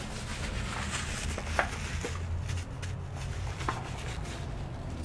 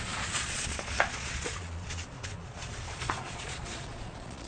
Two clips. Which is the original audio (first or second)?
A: first